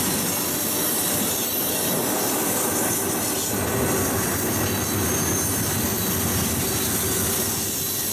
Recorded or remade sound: recorded